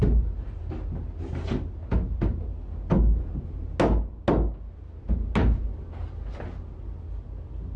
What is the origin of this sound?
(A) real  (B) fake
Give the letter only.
A